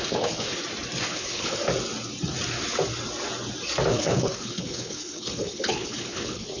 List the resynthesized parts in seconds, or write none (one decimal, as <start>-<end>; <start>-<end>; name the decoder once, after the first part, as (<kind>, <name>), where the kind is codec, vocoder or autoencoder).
0.0-0.6 (codec, HILCodec); 1.1-1.6; 3.9-6.6